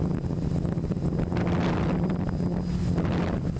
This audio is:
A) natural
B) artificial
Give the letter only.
B